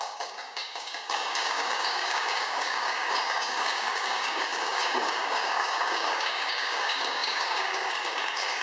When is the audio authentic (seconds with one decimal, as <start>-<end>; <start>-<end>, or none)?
none